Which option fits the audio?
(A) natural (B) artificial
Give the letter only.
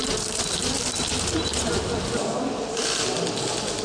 A